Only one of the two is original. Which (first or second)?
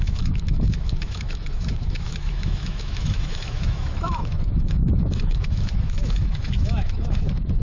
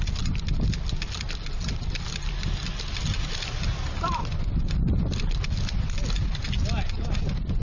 second